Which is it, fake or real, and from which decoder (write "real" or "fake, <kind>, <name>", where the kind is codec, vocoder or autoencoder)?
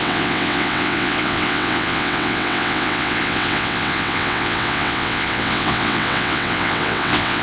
fake, vocoder, WaveNeXt